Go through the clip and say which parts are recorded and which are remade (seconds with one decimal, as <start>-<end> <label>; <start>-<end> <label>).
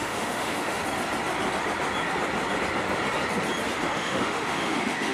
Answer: 0.0-0.8 remade; 0.8-3.8 recorded; 3.8-5.1 remade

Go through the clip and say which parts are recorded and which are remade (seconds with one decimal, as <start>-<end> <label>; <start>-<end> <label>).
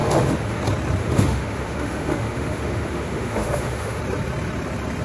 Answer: 0.0-0.6 remade; 0.6-1.0 recorded; 1.0-4.0 remade; 4.0-5.0 recorded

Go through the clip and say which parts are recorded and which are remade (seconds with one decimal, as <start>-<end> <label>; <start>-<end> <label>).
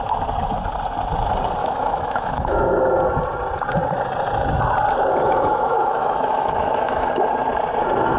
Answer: 0.0-1.6 recorded; 1.6-2.8 remade; 2.8-5.2 recorded; 5.2-7.1 remade; 7.1-8.2 recorded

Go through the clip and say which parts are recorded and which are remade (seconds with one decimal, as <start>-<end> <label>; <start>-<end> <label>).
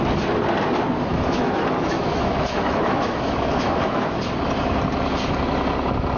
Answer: 0.0-1.1 recorded; 1.1-4.2 remade; 4.2-6.2 recorded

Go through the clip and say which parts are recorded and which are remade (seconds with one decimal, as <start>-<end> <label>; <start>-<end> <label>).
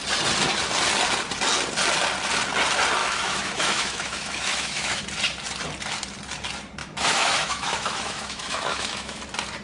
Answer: 0.0-3.0 recorded; 3.0-5.0 remade; 5.0-6.8 recorded; 6.8-9.2 remade; 9.2-9.6 recorded